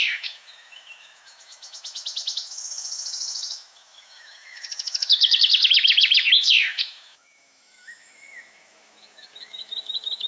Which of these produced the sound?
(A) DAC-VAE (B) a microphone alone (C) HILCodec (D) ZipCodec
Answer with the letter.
A